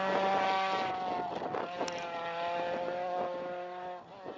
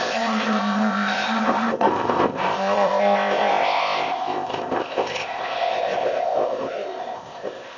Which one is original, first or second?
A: first